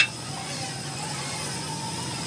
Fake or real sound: fake